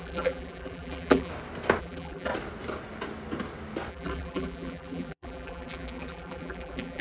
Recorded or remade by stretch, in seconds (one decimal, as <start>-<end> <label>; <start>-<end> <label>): 0.0-1.3 remade; 1.3-1.8 recorded; 1.8-2.3 remade; 2.3-3.9 recorded; 3.9-7.0 remade